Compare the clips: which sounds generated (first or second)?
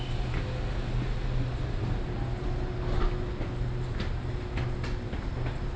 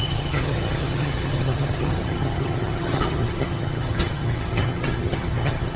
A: second